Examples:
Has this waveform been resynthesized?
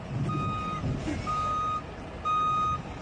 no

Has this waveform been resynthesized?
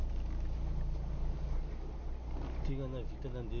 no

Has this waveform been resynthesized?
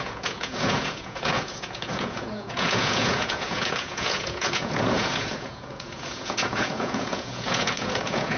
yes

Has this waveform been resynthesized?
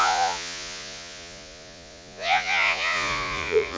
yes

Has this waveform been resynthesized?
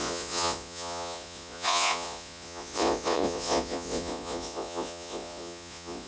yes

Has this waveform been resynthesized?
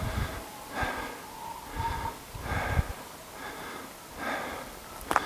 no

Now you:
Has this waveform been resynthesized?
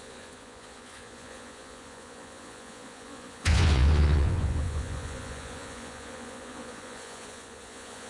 yes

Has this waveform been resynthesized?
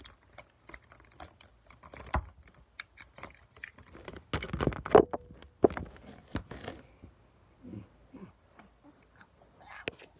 no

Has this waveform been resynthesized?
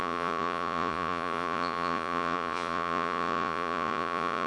yes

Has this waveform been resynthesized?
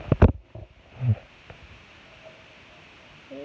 no